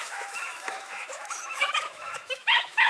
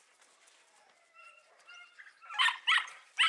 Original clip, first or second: second